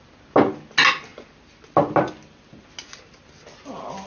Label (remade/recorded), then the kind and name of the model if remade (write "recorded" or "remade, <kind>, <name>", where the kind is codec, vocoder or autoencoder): recorded